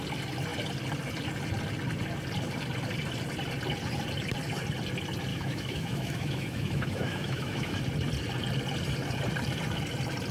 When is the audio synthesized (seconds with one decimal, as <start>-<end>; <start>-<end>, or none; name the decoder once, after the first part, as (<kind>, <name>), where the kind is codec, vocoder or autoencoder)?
5.3-7.8 (autoencoder, DAC-VAE)